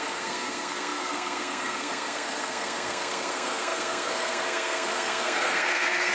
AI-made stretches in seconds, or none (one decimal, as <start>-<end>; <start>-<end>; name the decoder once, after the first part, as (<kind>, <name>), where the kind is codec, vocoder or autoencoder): 0.0-6.1 (codec, SNAC)